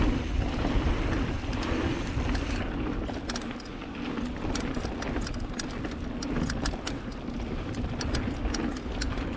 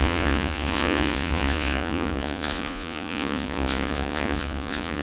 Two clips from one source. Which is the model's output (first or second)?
second